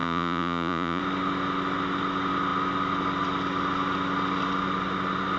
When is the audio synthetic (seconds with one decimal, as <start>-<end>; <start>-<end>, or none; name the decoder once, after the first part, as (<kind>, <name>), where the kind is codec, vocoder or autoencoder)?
0.0-1.0 (vocoder, Vocos)